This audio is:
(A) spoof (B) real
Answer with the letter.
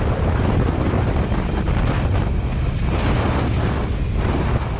B